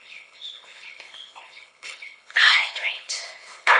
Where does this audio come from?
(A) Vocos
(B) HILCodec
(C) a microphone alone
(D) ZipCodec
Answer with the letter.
B